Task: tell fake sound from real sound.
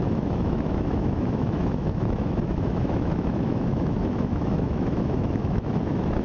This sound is fake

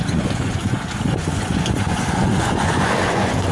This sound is fake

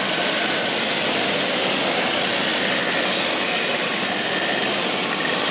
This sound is real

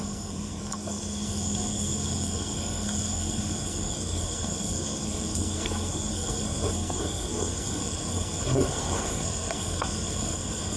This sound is fake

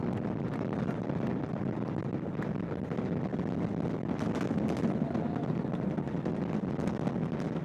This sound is real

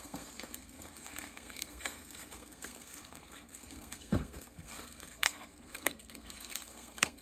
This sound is fake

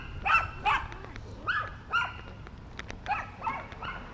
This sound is real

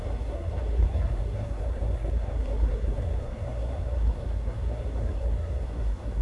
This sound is fake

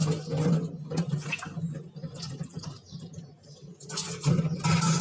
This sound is real